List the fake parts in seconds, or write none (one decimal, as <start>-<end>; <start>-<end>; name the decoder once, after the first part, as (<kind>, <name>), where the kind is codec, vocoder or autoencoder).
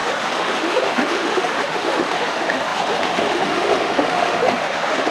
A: 0.0-5.1 (autoencoder, DAC-VAE)